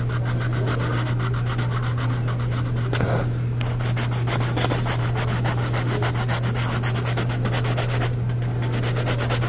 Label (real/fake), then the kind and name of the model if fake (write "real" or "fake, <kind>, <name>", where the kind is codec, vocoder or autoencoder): real